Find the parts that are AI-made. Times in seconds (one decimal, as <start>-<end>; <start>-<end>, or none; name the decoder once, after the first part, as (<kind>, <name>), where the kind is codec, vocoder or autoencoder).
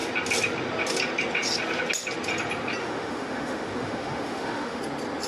2.8-4.8 (autoencoder, DAC-VAE)